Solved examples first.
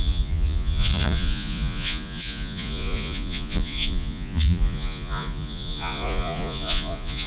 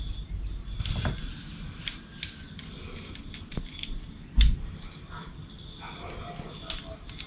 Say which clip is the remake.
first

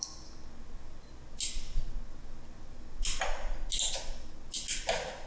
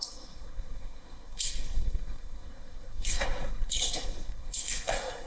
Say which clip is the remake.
second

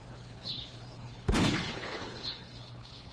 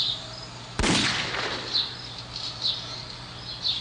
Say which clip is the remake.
first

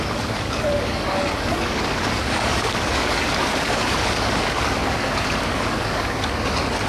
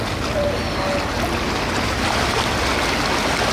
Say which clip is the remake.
first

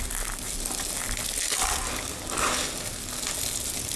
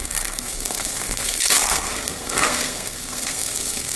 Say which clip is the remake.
second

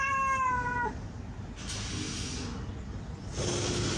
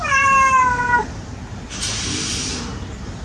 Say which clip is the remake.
second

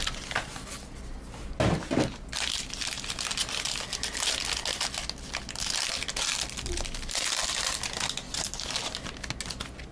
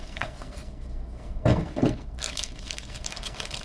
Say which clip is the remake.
second